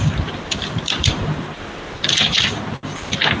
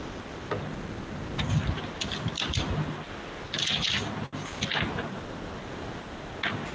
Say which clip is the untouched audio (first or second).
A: second